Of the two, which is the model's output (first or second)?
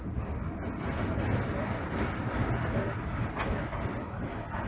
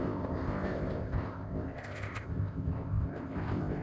second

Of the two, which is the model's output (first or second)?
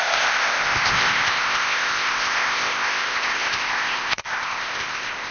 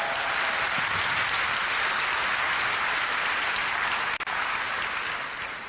first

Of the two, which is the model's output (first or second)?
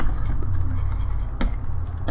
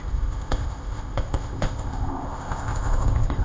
second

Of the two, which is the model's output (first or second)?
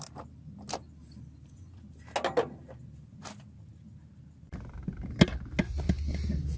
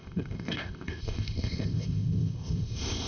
second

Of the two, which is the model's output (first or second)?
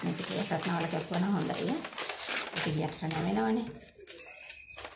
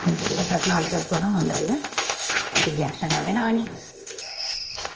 second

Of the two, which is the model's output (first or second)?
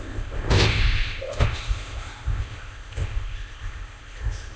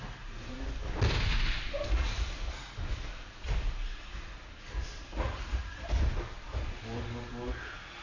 first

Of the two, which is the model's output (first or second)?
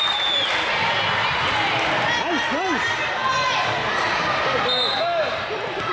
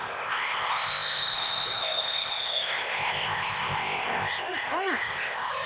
second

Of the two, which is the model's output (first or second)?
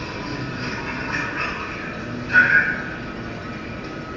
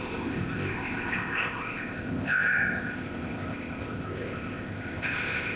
second